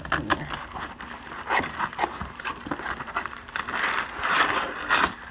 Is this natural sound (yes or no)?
yes